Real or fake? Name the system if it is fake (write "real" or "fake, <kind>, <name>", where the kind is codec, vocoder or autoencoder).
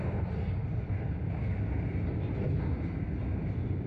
real